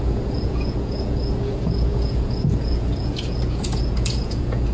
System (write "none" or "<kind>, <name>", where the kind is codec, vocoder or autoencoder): vocoder, Vocos